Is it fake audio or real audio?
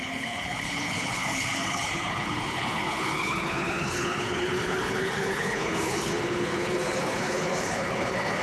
fake